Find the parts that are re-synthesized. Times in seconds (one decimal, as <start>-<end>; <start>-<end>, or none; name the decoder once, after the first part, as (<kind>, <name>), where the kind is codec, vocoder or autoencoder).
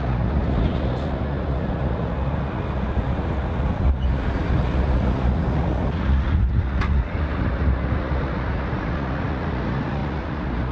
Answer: 0.0-10.7 (vocoder, Vocos)